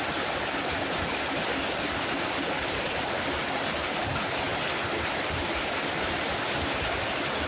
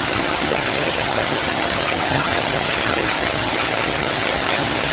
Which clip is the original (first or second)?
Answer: first